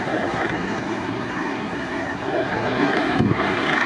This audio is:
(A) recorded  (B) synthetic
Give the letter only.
B